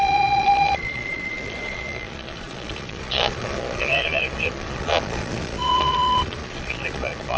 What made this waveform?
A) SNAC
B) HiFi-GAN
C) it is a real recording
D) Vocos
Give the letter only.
D